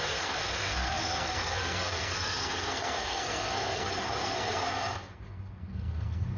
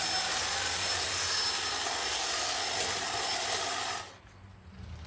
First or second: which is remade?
first